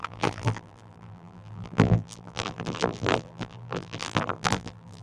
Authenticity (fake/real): fake